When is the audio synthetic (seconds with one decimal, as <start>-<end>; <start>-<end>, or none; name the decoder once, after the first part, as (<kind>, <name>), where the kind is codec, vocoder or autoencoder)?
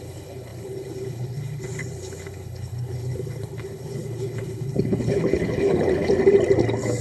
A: 0.0-6.1 (codec, HILCodec)